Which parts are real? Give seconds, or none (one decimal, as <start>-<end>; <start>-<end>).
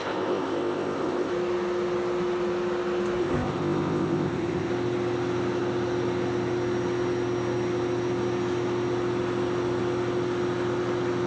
1.3-3.2; 4.7-11.3